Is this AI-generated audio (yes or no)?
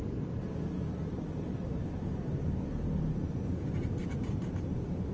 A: no